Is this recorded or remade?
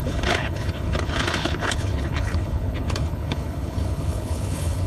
remade